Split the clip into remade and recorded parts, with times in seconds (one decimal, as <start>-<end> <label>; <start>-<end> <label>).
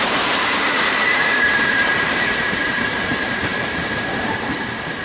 0.0-5.0 remade